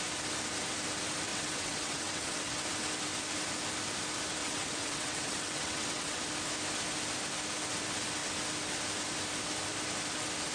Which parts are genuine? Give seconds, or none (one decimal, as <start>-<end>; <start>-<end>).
0.0-1.3; 2.6-4.4; 6.2-10.5